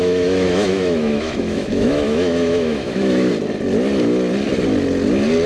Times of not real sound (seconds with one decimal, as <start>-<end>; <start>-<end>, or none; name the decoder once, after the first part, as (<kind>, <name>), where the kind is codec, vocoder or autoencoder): 0.0-3.3 (autoencoder, DAC-VAE)